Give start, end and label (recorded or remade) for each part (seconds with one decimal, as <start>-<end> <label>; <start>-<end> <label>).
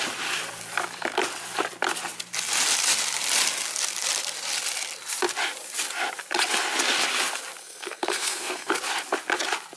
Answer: 0.0-7.6 recorded; 7.6-8.8 remade; 8.8-9.8 recorded